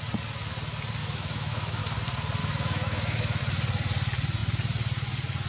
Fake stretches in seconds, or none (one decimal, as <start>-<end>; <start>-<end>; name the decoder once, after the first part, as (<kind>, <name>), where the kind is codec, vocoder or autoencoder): 1.0-1.8 (autoencoder, DAC-VAE); 2.4-3.4